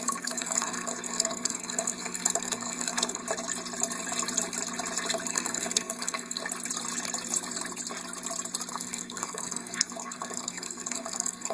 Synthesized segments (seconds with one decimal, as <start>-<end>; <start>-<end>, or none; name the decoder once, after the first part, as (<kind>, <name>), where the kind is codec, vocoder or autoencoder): 0.0-3.2 (codec, SNAC); 5.3-6.4; 8.7-11.5